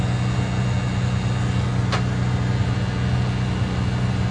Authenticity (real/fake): real